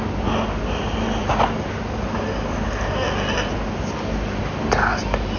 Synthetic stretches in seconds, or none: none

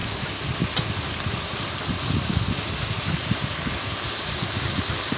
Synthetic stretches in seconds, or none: none

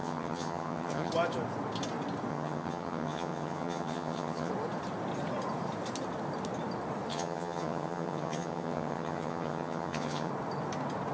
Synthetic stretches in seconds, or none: 0.0-1.1 (vocoder, HiFi-GAN); 2.3-4.5; 7.1-10.3